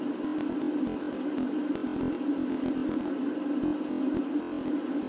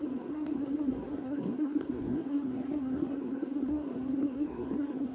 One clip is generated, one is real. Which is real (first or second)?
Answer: first